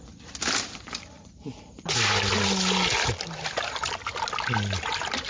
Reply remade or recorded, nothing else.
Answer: recorded